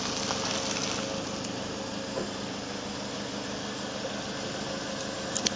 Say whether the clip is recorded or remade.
recorded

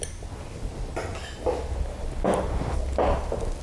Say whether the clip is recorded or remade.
recorded